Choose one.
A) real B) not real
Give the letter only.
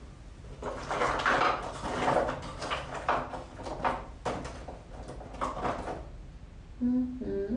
A